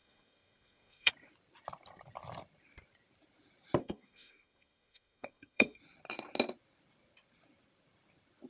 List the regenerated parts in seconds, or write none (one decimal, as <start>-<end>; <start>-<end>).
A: 0.0-1.1; 3.8-5.8